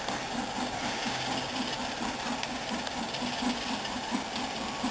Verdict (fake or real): real